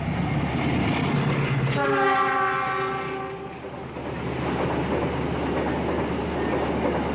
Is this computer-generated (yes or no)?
no